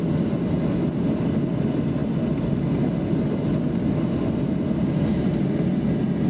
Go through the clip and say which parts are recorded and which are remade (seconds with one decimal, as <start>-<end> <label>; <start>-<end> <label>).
0.0-6.3 recorded